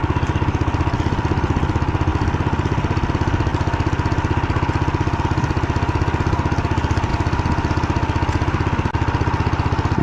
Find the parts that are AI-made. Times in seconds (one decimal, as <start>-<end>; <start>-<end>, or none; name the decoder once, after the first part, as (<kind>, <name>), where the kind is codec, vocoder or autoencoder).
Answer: none